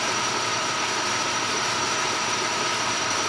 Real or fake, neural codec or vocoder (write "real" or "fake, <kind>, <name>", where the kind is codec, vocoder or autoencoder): fake, vocoder, BigVGAN v2